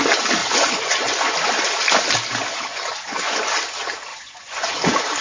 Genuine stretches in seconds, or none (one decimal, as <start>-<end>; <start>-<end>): 0.0-0.4; 1.2-2.7; 3.3-4.1; 4.8-5.2